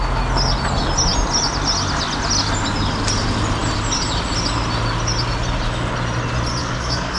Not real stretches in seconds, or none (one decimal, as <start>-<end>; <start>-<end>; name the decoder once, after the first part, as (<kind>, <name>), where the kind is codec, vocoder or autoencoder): 6.6-7.2 (codec, DAC)